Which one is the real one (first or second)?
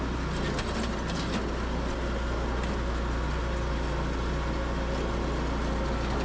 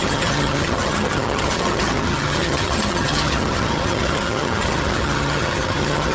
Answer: first